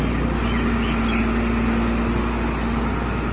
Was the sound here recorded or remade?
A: recorded